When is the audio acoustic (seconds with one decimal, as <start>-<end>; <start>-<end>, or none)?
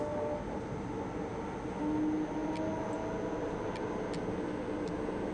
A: 0.0-5.3